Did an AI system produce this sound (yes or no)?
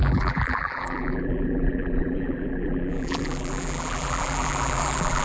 yes